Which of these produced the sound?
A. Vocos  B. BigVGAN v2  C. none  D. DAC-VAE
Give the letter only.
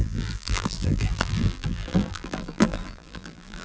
B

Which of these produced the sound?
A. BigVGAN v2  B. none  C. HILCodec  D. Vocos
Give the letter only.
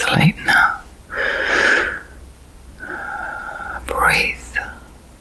A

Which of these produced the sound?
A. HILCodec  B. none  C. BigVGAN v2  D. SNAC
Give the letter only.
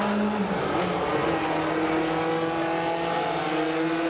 B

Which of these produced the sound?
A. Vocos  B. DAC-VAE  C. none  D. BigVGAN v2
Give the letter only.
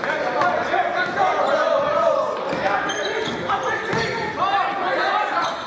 C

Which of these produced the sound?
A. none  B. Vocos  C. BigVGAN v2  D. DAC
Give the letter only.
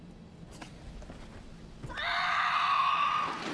A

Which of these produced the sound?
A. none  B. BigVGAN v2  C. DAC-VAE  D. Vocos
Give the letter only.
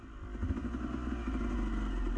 A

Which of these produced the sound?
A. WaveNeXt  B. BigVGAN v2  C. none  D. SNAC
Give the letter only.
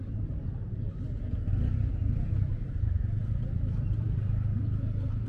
B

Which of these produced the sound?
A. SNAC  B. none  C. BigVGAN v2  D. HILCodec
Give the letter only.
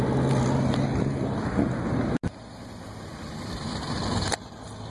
B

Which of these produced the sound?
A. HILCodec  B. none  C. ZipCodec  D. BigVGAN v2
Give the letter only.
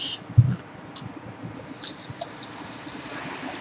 B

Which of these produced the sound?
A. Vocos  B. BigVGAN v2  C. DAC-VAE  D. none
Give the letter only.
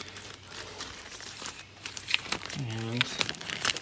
B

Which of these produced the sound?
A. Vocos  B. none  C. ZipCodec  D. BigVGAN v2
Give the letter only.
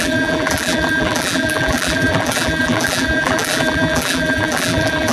D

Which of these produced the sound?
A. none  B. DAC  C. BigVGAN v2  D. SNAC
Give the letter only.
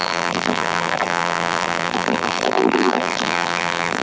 C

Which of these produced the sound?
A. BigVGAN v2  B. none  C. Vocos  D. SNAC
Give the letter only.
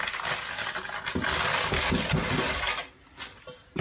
B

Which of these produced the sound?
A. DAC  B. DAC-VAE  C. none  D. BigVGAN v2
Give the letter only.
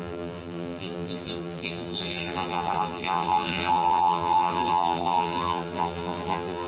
D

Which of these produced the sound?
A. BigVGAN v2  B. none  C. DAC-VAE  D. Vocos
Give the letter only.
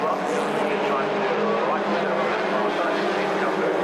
B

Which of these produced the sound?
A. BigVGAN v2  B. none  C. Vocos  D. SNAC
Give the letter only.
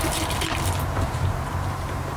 A